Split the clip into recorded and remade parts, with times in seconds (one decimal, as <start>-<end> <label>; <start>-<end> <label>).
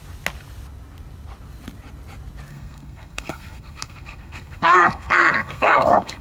0.0-2.5 recorded; 2.5-6.2 remade